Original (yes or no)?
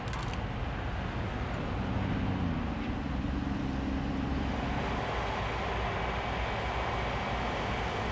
yes